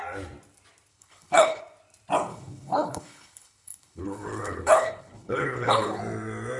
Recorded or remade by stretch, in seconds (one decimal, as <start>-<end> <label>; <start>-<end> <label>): 0.0-0.9 recorded; 0.9-1.6 remade; 1.6-2.3 recorded; 2.3-6.0 remade; 6.0-6.6 recorded